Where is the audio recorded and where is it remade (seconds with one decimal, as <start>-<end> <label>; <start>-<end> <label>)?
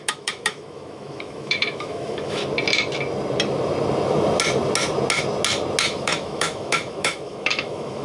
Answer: 0.0-2.4 remade; 2.4-5.8 recorded; 5.8-8.0 remade